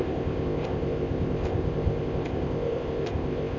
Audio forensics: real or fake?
fake